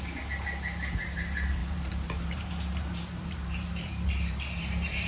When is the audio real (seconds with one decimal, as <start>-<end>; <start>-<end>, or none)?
0.0-1.6